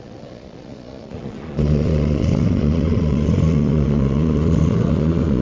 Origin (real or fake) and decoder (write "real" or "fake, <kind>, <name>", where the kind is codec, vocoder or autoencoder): fake, vocoder, Vocos